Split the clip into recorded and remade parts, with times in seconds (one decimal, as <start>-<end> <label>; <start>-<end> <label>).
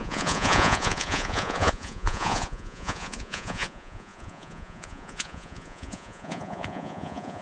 0.0-7.4 remade